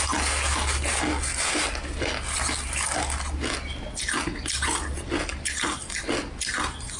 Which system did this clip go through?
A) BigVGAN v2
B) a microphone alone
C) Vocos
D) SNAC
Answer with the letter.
B